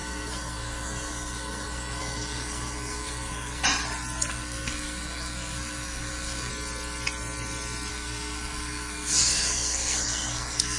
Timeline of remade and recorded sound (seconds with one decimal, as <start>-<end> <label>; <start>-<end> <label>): 0.0-3.6 remade; 3.6-4.3 recorded; 4.3-6.5 remade; 6.5-7.9 recorded; 7.9-10.8 remade